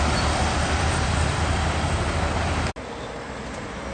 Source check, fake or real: real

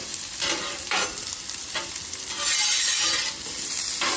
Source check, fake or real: real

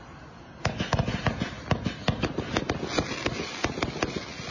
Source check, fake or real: real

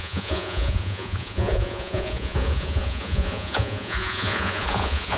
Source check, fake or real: fake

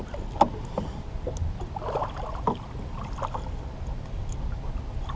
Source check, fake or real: real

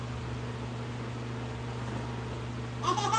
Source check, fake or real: real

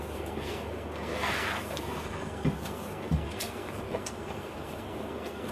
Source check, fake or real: fake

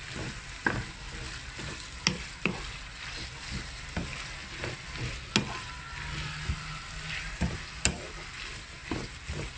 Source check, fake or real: real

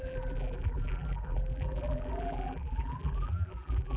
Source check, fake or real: fake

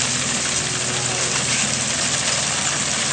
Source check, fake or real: real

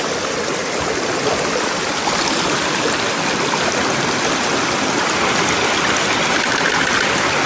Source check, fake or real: real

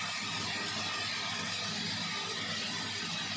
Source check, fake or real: real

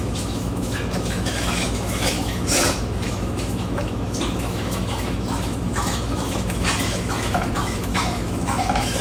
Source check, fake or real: fake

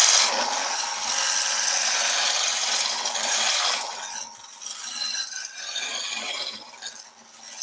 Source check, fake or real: real